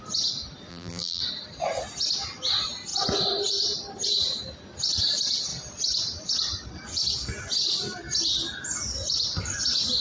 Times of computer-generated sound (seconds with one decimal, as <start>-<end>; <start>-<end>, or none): 0.7-1.2